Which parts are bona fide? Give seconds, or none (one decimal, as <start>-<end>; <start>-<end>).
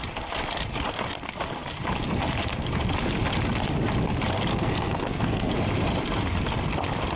0.0-4.5; 5.5-7.2